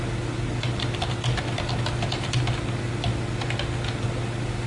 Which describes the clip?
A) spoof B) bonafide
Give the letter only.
B